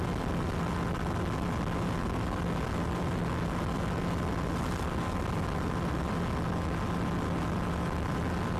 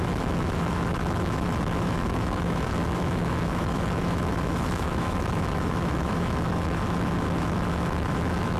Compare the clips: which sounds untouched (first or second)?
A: first